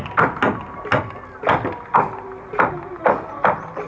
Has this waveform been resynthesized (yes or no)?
no